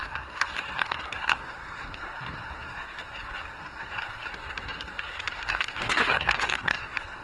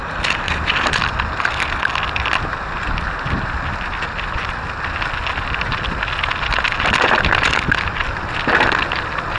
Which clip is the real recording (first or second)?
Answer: second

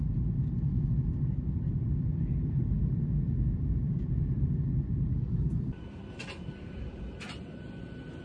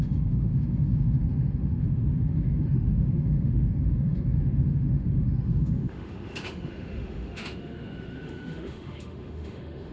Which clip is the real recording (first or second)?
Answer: first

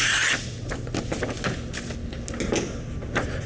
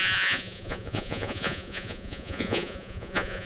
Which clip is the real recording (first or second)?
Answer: first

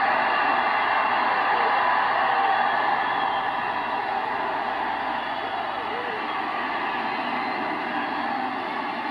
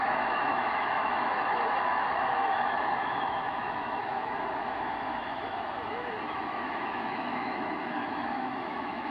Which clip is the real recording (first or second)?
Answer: first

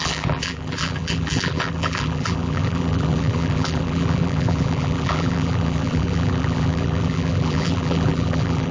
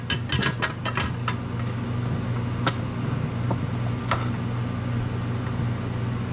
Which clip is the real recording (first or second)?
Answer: second